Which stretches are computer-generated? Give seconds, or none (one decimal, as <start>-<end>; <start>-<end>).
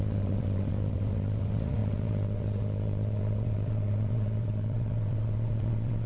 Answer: 0.0-6.1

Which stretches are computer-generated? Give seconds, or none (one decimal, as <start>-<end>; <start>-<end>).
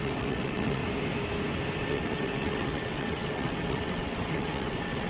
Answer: 0.0-0.8; 1.9-5.1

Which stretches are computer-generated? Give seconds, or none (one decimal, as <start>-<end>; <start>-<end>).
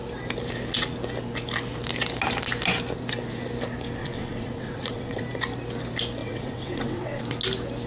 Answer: 4.0-5.2; 6.2-7.2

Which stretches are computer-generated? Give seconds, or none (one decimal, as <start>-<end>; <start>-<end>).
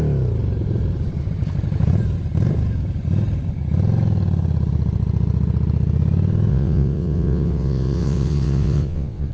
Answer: 6.5-9.3